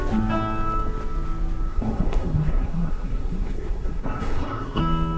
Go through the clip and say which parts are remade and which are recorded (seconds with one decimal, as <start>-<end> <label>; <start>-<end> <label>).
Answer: 0.0-1.7 recorded; 1.7-4.8 remade; 4.8-5.2 recorded